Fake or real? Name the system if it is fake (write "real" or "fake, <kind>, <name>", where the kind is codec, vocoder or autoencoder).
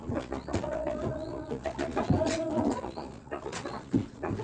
fake, vocoder, Vocos